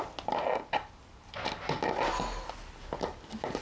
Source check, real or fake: real